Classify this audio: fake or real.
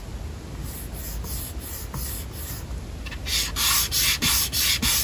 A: real